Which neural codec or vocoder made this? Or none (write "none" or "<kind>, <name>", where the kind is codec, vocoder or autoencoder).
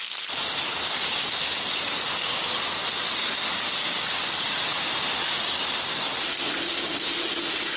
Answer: none